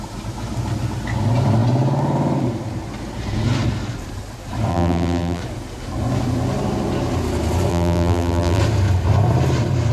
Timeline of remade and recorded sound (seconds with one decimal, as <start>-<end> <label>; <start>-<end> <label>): 0.0-4.7 recorded; 4.7-5.4 remade; 5.4-7.7 recorded; 7.7-8.6 remade; 8.6-9.9 recorded